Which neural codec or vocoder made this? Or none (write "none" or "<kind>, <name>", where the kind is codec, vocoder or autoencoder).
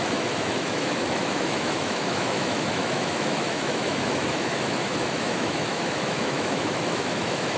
autoencoder, DAC-VAE